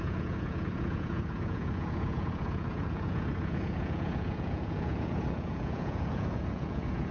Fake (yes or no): yes